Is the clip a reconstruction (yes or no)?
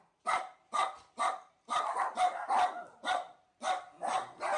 no